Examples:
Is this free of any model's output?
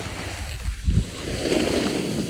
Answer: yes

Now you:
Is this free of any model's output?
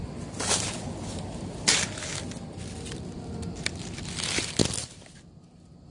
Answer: yes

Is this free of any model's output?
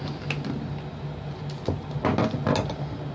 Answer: yes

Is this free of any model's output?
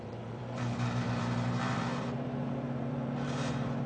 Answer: no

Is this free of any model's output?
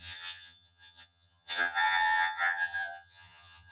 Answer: no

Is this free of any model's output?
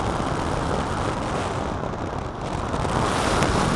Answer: yes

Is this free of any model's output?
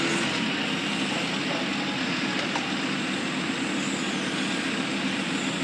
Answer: yes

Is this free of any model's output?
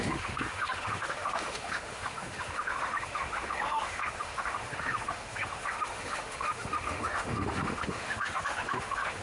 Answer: no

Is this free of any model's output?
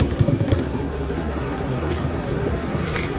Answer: no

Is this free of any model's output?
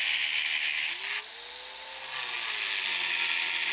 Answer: yes